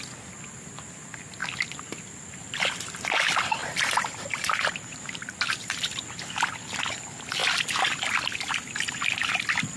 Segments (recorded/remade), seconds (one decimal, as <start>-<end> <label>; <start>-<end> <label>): 0.0-3.6 recorded; 3.6-5.9 remade; 5.9-9.8 recorded